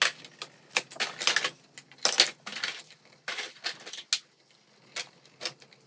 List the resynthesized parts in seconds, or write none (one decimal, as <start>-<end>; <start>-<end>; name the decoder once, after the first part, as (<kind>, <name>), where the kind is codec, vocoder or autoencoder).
none